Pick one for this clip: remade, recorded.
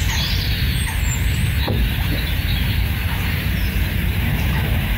remade